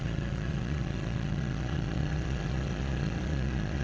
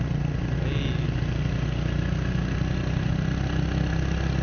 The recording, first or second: second